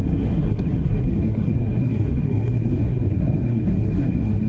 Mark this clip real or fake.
fake